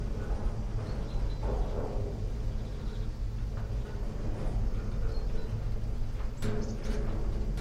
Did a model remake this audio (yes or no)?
no